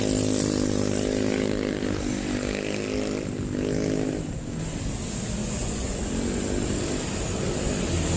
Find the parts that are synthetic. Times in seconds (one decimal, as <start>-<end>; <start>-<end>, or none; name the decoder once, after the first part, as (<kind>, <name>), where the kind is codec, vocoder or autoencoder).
5.4-6.1 (vocoder, Vocos)